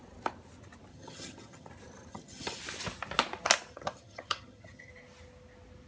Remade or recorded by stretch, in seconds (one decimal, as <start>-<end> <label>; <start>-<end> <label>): 0.0-0.9 recorded; 0.9-1.7 remade; 1.7-2.1 recorded; 2.1-2.6 remade; 2.6-3.7 recorded; 3.7-4.9 remade; 4.9-5.9 recorded